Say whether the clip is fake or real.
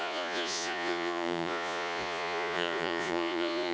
fake